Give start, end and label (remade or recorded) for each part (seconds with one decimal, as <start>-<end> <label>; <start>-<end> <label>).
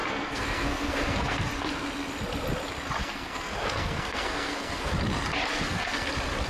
0.0-1.4 remade; 1.4-3.0 recorded; 3.0-4.9 remade; 4.9-5.5 recorded; 5.5-6.1 remade; 6.1-6.5 recorded